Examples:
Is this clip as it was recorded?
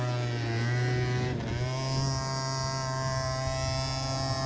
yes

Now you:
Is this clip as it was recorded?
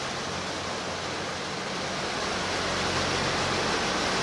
yes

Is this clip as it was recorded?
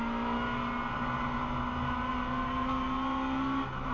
yes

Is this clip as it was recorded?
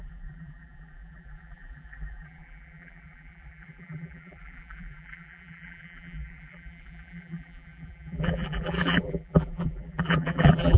no